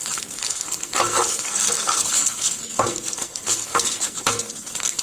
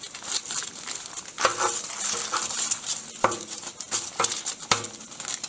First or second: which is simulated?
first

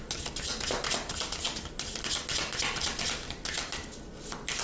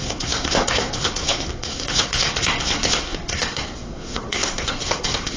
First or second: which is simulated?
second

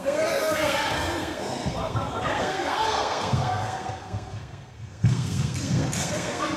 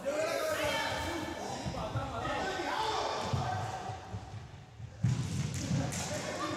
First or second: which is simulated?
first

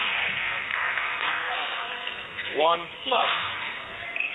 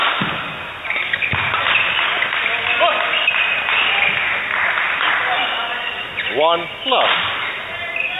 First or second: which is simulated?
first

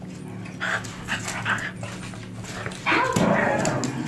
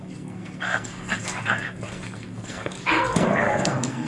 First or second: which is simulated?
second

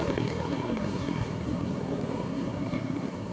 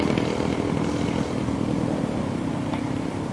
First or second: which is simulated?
first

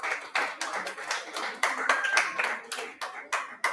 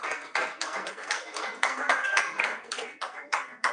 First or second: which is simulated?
second